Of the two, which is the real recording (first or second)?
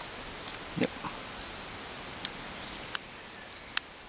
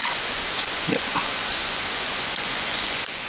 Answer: first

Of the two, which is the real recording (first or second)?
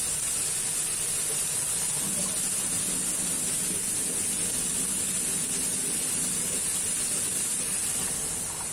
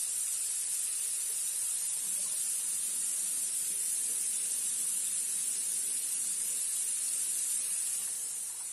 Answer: first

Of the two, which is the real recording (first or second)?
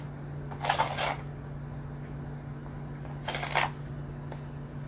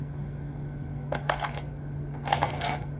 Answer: first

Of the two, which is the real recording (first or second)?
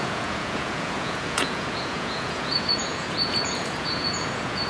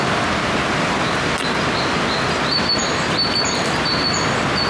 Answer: second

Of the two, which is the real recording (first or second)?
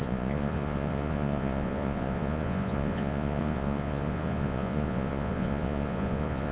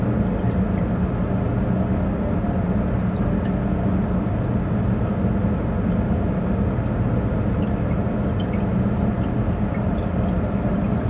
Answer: second